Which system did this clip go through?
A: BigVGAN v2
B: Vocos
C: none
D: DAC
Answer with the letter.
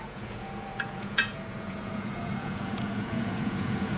B